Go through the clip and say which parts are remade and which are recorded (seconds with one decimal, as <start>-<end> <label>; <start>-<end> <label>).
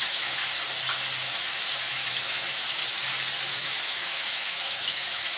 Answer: 0.0-0.4 remade; 0.4-1.9 recorded; 1.9-2.8 remade; 2.8-3.5 recorded; 3.5-5.4 remade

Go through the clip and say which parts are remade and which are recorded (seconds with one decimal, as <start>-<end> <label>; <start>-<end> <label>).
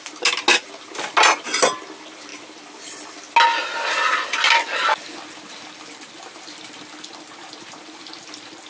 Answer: 0.0-8.7 recorded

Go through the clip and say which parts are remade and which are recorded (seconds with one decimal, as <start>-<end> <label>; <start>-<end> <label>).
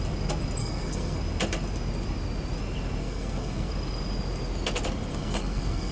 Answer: 0.0-0.6 recorded; 0.6-1.2 remade; 1.2-3.0 recorded; 3.0-3.7 remade; 3.7-5.1 recorded; 5.1-5.9 remade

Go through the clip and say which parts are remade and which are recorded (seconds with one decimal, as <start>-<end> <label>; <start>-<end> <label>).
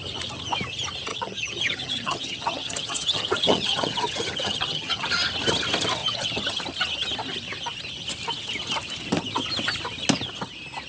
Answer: 0.0-1.1 recorded; 1.1-5.1 remade; 5.1-6.0 recorded; 6.0-6.6 remade; 6.6-10.9 recorded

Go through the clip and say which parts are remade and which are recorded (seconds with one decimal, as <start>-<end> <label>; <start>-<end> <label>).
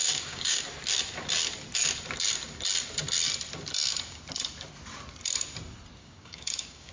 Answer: 0.0-0.6 remade; 0.6-6.0 recorded; 6.0-6.9 remade